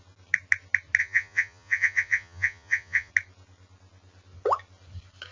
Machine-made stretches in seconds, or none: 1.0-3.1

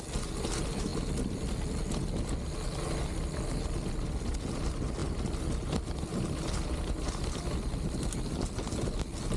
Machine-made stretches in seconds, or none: none

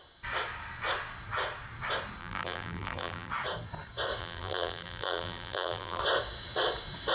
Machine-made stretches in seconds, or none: 2.2-3.3; 4.2-6.0